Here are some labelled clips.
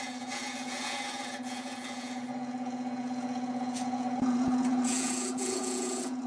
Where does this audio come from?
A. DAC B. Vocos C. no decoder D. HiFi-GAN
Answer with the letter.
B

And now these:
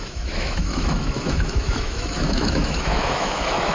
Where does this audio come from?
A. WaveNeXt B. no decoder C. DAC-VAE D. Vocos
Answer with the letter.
C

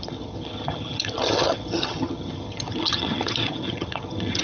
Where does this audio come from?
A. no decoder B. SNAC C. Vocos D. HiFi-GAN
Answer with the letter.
D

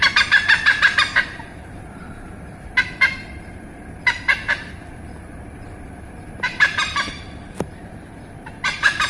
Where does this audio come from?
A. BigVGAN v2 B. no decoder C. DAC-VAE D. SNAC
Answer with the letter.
A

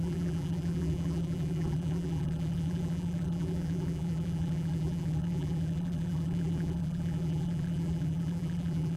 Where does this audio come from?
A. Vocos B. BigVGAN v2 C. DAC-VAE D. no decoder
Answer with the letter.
B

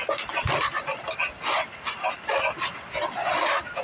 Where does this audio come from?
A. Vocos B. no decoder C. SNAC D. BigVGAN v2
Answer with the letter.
B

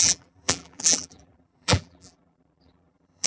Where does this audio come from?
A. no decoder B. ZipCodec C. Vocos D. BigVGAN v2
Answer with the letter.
D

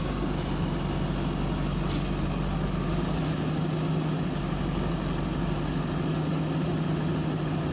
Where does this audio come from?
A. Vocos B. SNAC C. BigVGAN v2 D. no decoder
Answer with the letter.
D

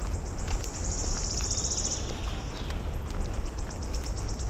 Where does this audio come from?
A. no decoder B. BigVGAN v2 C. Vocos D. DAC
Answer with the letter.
A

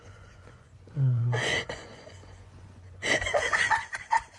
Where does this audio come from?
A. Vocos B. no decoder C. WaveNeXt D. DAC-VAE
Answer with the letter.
A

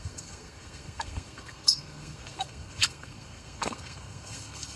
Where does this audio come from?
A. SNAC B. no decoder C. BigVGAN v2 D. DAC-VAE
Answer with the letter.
A